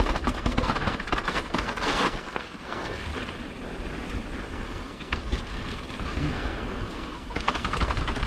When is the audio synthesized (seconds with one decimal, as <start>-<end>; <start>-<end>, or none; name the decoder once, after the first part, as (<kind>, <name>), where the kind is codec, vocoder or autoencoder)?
0.0-3.1 (codec, SNAC); 4.5-8.3